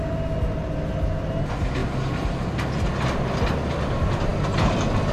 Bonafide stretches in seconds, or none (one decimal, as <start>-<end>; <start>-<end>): 0.0-1.8; 2.5-5.1